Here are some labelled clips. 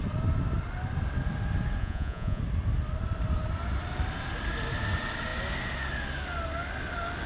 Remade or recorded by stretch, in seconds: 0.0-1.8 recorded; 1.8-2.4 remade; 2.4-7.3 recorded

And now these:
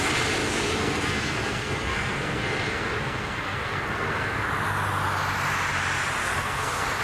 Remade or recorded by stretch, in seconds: 0.0-0.4 recorded; 0.4-4.5 remade; 4.5-6.2 recorded; 6.2-7.0 remade

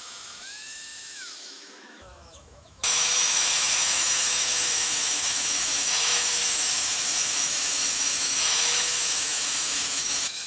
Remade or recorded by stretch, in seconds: 0.0-10.5 remade

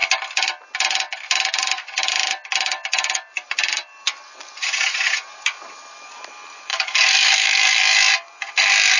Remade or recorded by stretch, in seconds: 0.0-6.7 recorded; 6.7-7.8 remade; 7.8-9.0 recorded